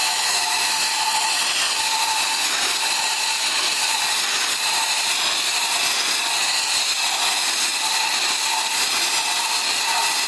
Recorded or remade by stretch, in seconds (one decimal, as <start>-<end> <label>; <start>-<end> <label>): 0.0-0.8 remade; 0.8-10.3 recorded